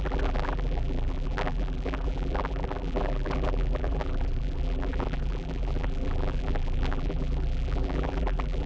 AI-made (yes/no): yes